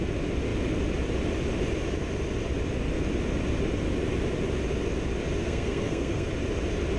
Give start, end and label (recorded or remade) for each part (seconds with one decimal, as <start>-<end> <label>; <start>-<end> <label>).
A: 0.0-5.4 recorded; 5.4-6.3 remade; 6.3-7.0 recorded